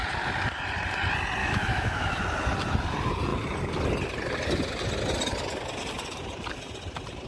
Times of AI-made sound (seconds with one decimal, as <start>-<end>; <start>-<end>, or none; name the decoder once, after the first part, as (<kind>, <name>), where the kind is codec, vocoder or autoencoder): 1.4-2.2 (autoencoder, DAC-VAE)